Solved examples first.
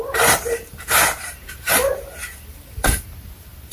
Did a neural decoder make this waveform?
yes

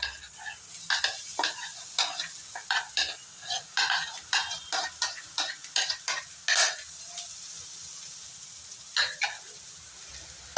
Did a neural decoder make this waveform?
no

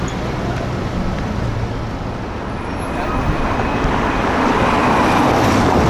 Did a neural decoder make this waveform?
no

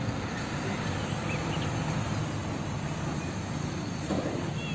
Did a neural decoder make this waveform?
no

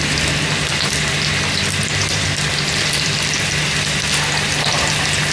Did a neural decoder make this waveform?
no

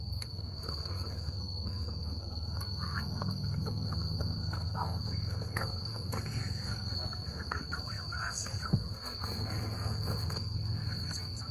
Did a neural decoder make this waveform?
yes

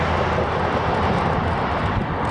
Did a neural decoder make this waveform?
no